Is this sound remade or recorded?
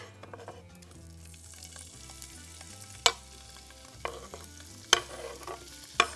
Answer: recorded